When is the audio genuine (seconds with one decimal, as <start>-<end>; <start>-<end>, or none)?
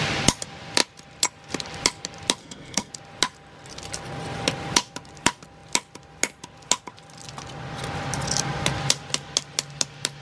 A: 0.0-2.4; 2.9-10.2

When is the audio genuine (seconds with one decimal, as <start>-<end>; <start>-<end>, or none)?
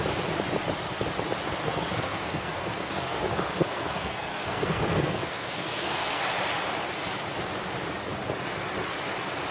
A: 0.0-1.6; 6.2-9.5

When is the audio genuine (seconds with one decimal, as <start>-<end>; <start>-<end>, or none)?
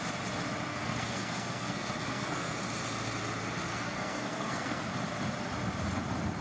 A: 0.0-0.7; 2.6-3.7; 4.9-6.4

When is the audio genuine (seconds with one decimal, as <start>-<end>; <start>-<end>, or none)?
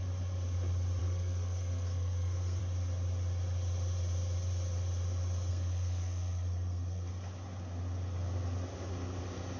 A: 0.0-1.0; 2.6-5.5; 7.1-9.6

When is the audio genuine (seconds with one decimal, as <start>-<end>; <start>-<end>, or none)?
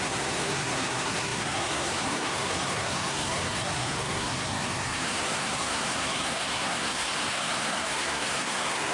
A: none